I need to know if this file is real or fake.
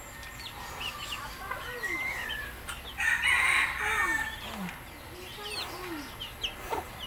real